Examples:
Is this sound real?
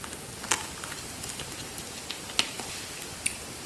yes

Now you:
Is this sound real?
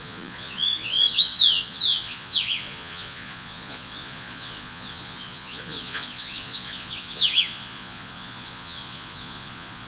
no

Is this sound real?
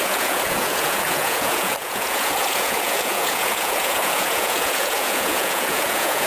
no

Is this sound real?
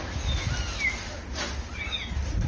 yes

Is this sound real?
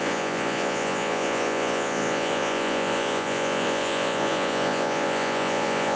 no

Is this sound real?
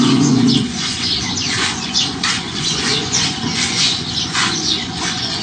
no